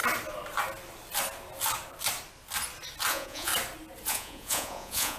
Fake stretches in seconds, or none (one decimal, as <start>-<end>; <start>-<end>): 3.1-3.5; 4.1-5.2